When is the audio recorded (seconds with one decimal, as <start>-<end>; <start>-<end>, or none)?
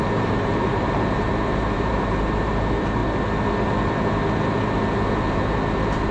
3.0-6.1